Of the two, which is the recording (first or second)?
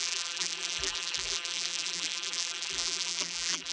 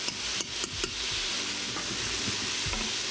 second